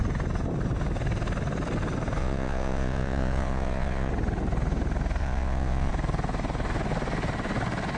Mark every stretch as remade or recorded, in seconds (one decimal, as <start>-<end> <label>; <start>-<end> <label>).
0.0-2.2 recorded; 2.2-4.1 remade; 4.1-5.2 recorded; 5.2-5.9 remade; 5.9-8.0 recorded

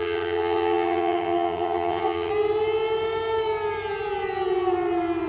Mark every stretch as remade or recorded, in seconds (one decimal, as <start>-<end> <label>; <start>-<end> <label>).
0.0-2.3 remade; 2.3-5.3 recorded

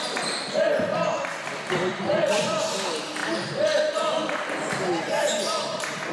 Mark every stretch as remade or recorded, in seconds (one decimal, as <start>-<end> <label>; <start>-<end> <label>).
0.0-1.9 recorded; 1.9-2.5 remade; 2.5-6.1 recorded

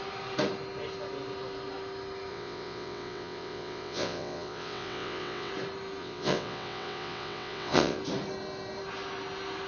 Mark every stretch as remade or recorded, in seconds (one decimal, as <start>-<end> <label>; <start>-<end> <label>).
0.0-2.3 recorded; 2.3-5.5 remade; 5.5-6.0 recorded; 6.0-8.0 remade; 8.0-9.7 recorded

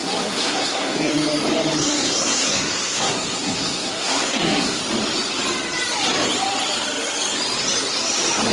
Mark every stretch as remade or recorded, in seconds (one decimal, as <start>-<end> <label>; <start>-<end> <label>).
0.0-1.1 remade; 1.1-1.8 recorded; 1.8-4.8 remade; 4.8-8.5 recorded

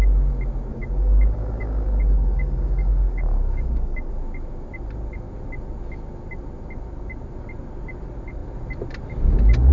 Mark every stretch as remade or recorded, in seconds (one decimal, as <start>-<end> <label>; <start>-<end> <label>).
0.0-0.7 recorded; 0.7-4.1 remade; 4.1-9.7 recorded

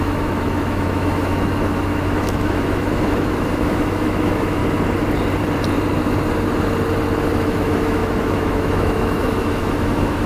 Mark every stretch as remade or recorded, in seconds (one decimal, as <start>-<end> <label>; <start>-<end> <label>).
0.0-4.6 remade; 4.6-7.3 recorded; 7.3-10.3 remade